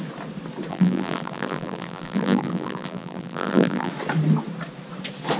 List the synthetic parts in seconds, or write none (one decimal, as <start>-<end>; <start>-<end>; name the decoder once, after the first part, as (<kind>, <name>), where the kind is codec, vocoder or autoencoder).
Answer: 0.7-3.9 (vocoder, BigVGAN v2)